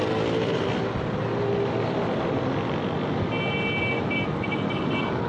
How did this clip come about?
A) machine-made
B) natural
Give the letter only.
B